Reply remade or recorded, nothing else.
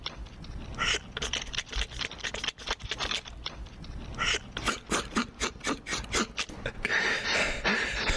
remade